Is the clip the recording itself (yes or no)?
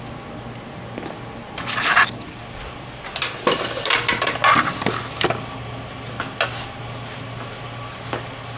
yes